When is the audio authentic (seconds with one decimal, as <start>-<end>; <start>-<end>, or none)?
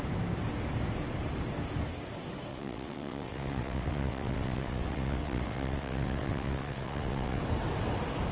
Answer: 0.0-2.5; 7.4-8.3